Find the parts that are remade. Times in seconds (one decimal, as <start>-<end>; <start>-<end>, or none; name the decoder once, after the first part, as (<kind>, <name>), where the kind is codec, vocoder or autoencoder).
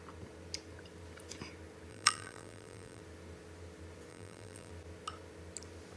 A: 1.9-3.0 (vocoder, BigVGAN v2); 4.1-4.7